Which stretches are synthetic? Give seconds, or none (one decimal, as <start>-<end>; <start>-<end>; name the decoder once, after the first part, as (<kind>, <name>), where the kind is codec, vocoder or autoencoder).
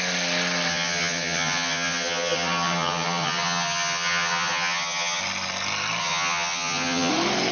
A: 0.7-5.2 (vocoder, HiFi-GAN); 6.0-7.1